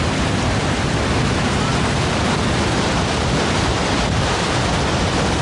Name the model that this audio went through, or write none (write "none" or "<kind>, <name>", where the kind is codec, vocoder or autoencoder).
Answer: none